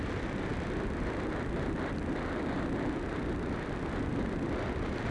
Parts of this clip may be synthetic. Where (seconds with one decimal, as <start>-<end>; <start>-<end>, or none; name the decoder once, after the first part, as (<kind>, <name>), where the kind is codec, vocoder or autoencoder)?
none